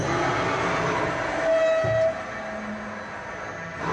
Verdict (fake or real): real